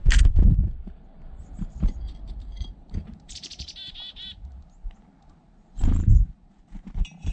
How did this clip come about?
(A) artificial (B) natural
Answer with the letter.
A